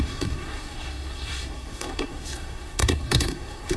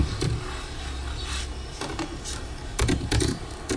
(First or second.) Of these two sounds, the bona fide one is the second